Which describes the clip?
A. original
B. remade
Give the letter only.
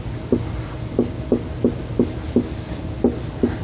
A